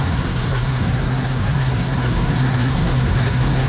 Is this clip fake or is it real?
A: fake